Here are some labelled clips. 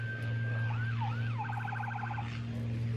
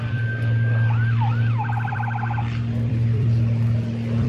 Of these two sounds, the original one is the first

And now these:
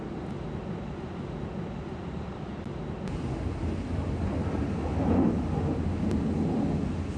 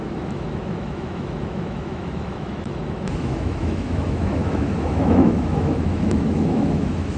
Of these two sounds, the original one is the first